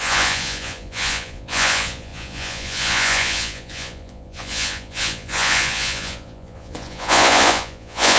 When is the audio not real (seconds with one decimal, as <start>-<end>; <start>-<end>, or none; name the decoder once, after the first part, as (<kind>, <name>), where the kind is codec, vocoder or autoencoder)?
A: 0.0-8.2 (vocoder, Vocos)